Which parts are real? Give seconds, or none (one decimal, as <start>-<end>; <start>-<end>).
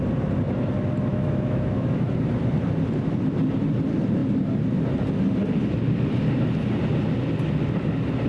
0.0-1.1; 2.1-8.3